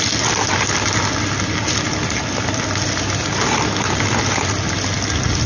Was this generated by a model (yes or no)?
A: no